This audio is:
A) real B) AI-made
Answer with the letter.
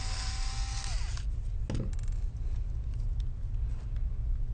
A